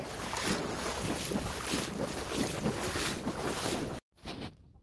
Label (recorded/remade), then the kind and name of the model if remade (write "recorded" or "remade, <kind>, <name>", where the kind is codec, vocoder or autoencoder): recorded